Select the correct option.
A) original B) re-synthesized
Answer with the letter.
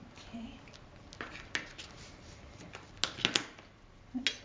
A